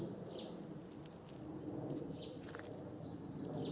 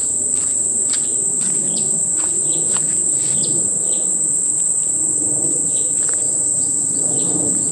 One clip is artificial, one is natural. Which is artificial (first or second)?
second